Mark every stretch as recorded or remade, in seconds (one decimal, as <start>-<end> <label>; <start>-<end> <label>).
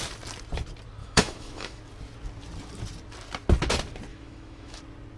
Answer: 0.0-1.0 recorded; 1.0-1.8 remade; 1.8-4.1 recorded; 4.1-4.8 remade; 4.8-5.2 recorded